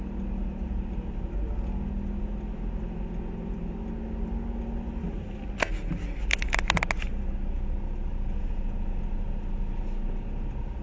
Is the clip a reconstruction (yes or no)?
no